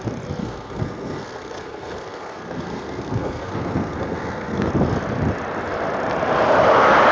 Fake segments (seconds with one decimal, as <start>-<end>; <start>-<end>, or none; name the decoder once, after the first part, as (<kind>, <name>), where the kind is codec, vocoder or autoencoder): 0.4-4.7 (codec, SNAC)

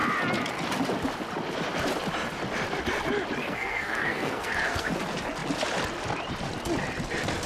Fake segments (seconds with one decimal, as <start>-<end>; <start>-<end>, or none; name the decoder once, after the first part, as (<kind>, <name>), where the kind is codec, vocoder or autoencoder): 3.4-4.9 (codec, SNAC)

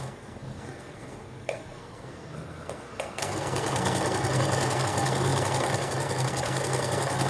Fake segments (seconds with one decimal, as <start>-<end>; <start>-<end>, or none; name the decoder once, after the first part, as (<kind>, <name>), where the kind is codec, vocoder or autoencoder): 0.0-7.3 (codec, SNAC)